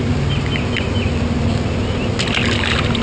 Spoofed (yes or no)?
no